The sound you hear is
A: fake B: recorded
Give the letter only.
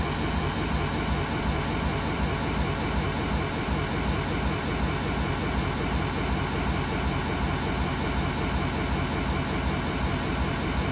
A